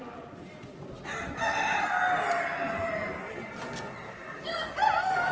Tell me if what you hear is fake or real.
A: real